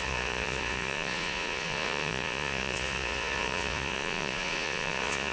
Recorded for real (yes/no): no